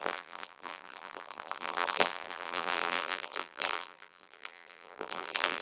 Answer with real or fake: fake